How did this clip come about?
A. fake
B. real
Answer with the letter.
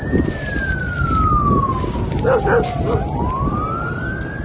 B